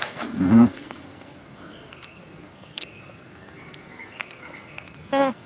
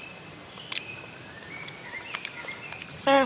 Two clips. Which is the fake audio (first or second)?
first